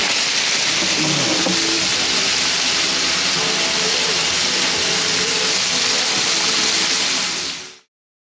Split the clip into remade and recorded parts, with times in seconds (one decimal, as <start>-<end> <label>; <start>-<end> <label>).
0.0-8.3 recorded